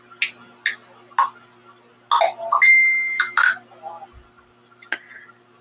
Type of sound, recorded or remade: recorded